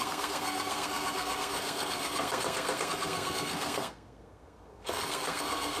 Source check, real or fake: fake